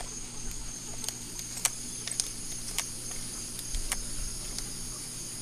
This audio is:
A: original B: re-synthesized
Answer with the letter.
A